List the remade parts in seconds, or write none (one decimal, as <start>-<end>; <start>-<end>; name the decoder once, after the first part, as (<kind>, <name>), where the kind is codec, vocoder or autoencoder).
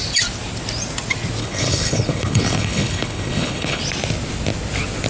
1.4-3.8 (codec, HILCodec)